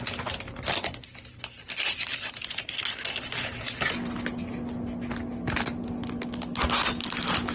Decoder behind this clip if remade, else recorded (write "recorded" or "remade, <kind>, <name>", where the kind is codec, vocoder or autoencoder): recorded